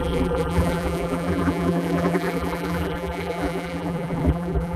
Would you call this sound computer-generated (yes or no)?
yes